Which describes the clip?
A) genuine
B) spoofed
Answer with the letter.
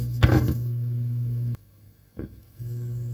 B